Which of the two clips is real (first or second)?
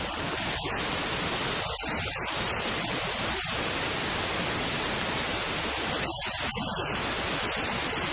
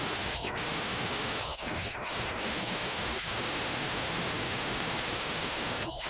first